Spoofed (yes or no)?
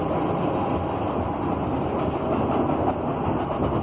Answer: no